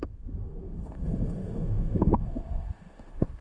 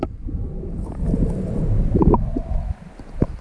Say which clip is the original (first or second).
second